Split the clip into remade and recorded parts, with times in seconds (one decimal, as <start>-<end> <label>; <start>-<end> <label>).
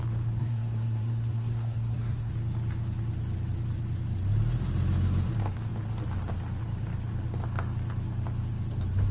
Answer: 0.0-0.4 recorded; 0.4-2.3 remade; 2.3-9.1 recorded